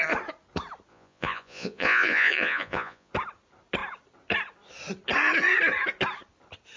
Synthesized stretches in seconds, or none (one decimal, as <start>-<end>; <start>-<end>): 0.9-3.1